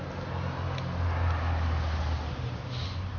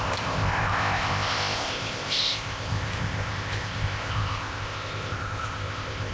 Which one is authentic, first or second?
first